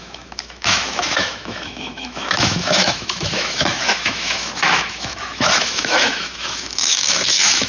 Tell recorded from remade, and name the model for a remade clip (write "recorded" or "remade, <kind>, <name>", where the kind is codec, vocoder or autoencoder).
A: remade, autoencoder, DAC-VAE